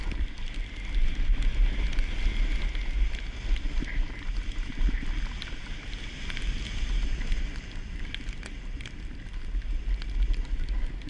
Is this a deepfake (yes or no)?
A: no